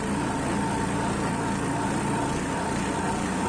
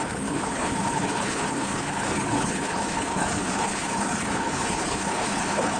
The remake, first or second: second